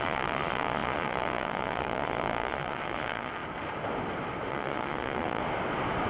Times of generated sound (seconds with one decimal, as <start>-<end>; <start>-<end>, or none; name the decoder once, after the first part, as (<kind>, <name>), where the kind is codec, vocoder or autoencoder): 0.0-3.4 (vocoder, Vocos); 4.5-5.4